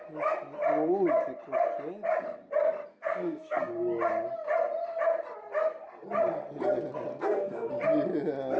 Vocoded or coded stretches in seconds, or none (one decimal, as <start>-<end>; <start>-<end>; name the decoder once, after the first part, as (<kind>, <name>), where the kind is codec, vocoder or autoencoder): 2.9-3.7 (codec, SNAC); 7.1-7.7